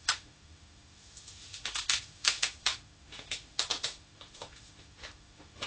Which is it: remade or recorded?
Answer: remade